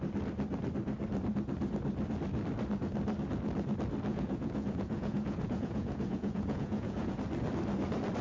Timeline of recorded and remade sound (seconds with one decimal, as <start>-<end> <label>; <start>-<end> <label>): 0.0-4.1 recorded; 4.1-7.1 remade; 7.1-8.2 recorded